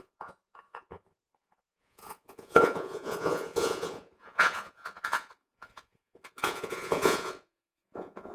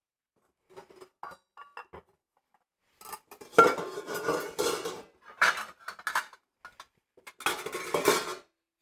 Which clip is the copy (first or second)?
first